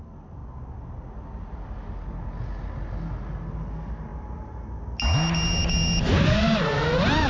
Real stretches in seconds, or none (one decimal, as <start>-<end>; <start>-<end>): 0.0-7.3